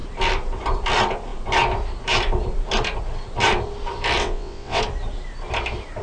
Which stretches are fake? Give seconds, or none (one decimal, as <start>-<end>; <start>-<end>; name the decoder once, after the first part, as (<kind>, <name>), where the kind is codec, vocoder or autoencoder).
4.2-4.8 (vocoder, WaveNeXt)